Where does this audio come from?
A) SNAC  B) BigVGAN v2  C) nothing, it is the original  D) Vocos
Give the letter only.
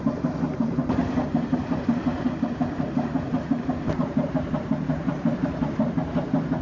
B